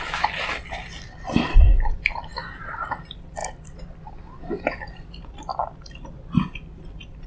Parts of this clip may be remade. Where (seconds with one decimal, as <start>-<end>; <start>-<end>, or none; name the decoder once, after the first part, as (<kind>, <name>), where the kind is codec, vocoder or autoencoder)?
none